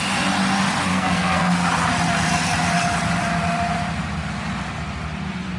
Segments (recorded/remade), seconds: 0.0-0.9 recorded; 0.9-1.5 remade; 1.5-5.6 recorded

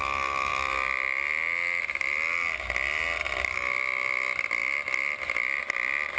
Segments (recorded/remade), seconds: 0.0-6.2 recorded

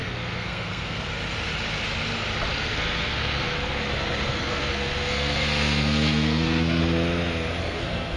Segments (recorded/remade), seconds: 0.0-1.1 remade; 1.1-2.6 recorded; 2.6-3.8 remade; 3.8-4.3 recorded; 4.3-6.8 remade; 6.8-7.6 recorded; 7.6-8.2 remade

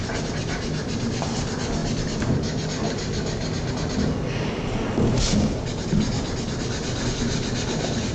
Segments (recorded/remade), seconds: 0.0-8.1 recorded